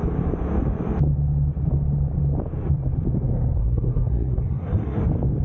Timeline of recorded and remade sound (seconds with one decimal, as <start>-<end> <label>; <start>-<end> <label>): 0.0-3.6 recorded; 3.6-5.0 remade; 5.0-5.4 recorded